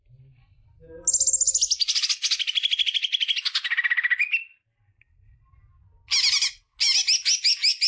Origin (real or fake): real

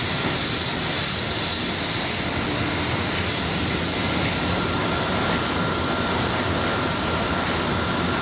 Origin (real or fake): real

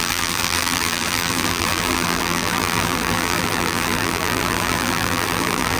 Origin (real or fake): fake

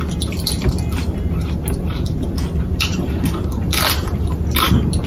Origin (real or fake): fake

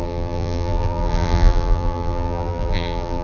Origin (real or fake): fake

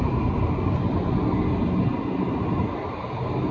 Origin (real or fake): real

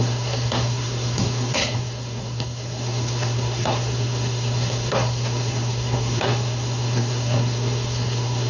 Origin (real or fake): fake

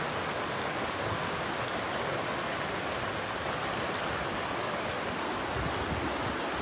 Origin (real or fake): real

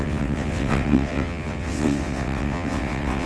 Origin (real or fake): fake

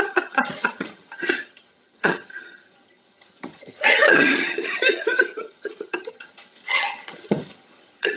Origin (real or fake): fake